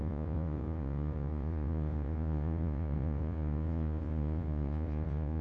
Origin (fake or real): fake